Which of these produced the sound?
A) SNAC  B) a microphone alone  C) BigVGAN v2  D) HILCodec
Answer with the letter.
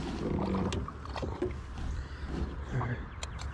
B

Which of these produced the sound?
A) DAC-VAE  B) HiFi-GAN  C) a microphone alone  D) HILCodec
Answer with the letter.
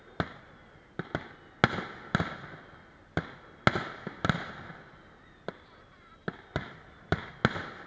C